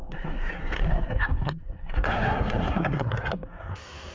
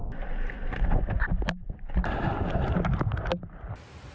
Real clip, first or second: second